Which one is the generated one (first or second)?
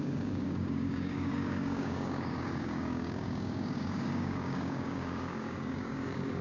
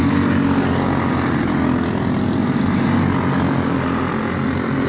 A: first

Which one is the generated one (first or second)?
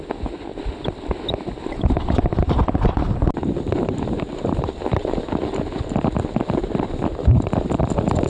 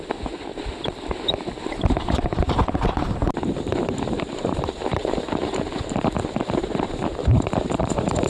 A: second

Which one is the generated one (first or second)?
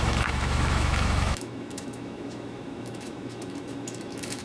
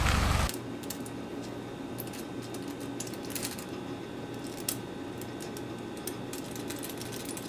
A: first